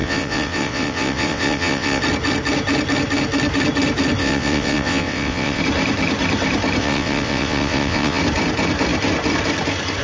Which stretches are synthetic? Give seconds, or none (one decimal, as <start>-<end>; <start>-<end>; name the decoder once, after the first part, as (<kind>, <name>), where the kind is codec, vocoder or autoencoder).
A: 0.0-2.0 (vocoder, WaveNeXt); 4.2-5.6; 6.8-8.2